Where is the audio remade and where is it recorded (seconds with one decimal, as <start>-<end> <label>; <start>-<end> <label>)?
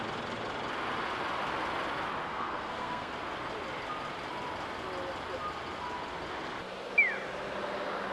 0.0-2.2 recorded; 2.2-3.1 remade; 3.1-8.1 recorded